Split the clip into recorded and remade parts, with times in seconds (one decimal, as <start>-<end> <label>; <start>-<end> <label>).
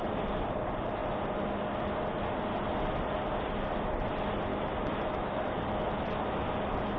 0.0-4.5 recorded; 4.5-5.4 remade; 5.4-7.0 recorded